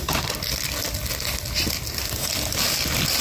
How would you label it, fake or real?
real